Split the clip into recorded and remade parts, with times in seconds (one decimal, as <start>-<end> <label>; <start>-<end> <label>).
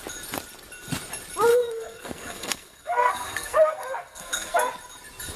0.0-1.5 recorded; 1.5-4.7 remade; 4.7-5.4 recorded